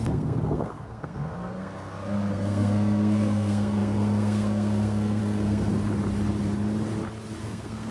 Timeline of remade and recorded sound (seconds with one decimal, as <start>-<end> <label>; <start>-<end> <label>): 0.0-5.7 remade; 5.7-7.4 recorded; 7.4-7.9 remade